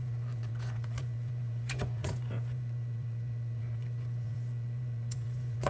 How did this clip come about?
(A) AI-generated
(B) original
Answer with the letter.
A